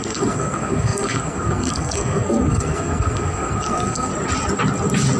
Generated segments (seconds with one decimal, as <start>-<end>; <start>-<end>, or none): 0.0-4.1